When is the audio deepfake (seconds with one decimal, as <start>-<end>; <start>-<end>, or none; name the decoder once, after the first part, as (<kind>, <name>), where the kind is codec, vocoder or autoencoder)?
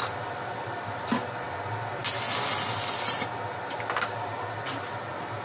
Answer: none